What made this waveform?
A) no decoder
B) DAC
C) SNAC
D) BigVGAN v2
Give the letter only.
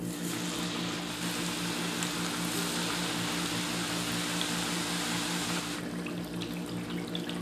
D